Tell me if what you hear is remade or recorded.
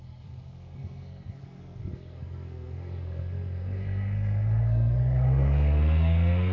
remade